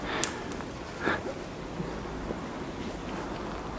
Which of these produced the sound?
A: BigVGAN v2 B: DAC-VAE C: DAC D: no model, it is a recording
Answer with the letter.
D